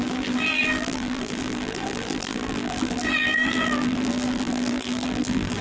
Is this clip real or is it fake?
fake